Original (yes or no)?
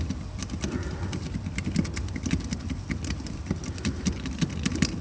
yes